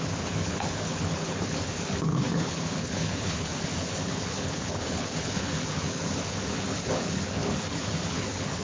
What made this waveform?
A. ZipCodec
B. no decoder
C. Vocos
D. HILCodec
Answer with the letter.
D